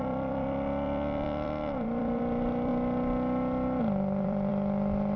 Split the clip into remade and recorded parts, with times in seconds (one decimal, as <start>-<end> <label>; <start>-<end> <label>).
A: 0.0-2.7 remade; 2.7-3.8 recorded; 3.8-4.5 remade; 4.5-5.2 recorded